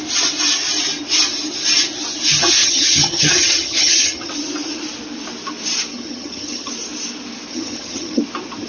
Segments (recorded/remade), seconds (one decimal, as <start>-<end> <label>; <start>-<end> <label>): 0.0-2.6 recorded; 2.6-4.3 remade; 4.3-5.9 recorded; 5.9-6.7 remade; 6.7-7.5 recorded; 7.5-8.2 remade; 8.2-8.7 recorded